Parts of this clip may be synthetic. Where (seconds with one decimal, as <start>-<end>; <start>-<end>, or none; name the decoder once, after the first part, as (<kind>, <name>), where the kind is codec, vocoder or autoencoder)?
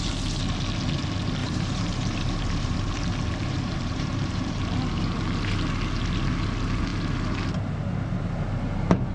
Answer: 1.4-2.9 (vocoder, BigVGAN v2); 3.4-4.6